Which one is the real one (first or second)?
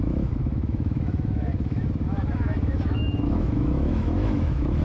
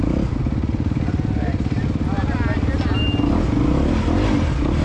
second